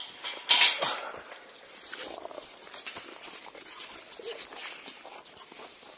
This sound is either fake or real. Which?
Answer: real